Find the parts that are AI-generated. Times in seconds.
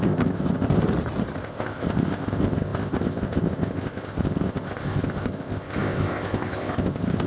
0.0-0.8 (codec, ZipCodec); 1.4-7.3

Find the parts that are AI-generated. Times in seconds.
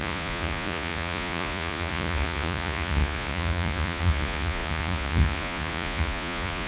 0.0-6.7 (vocoder, Vocos)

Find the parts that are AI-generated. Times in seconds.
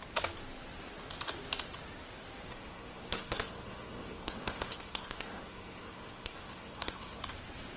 2.5-7.2 (codec, SNAC)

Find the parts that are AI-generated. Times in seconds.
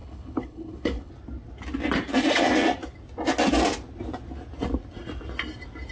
0.0-1.1 (codec, HILCodec)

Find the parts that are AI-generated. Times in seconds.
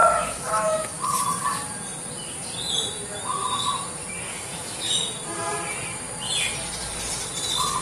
0.0-0.9 (autoencoder, DAC-VAE); 4.3-4.8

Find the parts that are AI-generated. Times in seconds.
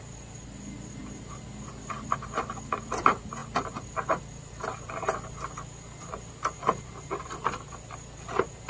none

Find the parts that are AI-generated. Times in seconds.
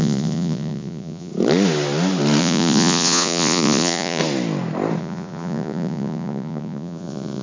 0.0-1.3 (vocoder, Vocos); 2.4-4.2; 5.0-7.4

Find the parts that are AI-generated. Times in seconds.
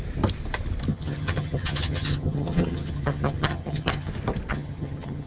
0.9-4.1 (vocoder, HiFi-GAN); 4.5-5.3